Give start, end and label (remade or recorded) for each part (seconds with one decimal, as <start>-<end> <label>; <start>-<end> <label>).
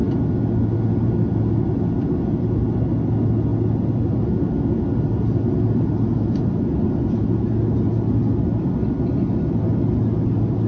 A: 0.0-10.7 recorded